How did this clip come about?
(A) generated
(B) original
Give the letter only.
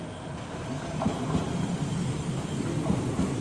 B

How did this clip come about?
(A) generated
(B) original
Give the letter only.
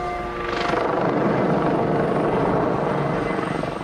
B